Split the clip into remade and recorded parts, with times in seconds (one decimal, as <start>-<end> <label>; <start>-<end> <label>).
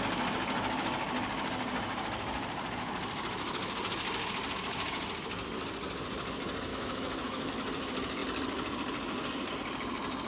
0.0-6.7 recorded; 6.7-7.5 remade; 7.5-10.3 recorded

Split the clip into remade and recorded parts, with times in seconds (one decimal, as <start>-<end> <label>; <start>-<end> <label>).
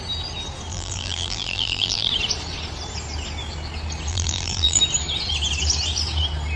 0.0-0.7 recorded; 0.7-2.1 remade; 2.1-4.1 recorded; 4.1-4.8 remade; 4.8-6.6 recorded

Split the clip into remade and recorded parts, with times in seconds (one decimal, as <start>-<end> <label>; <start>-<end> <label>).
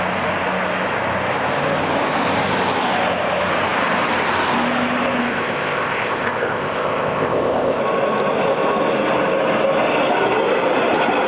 0.0-5.2 recorded; 5.2-7.8 remade; 7.8-11.3 recorded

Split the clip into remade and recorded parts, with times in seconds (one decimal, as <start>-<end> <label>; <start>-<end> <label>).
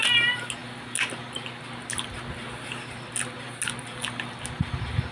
0.0-5.1 recorded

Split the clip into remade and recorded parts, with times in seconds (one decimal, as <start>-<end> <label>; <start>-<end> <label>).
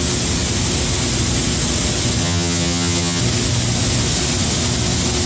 0.0-2.2 recorded; 2.2-3.2 remade; 3.2-5.3 recorded